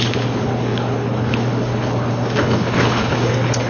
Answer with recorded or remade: remade